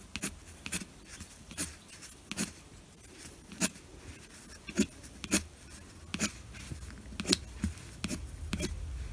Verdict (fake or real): real